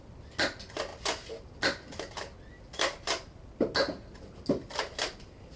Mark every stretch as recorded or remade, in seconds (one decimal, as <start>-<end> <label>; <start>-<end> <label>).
0.0-5.6 recorded